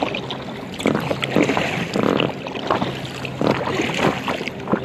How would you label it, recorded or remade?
recorded